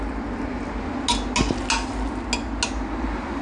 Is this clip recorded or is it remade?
recorded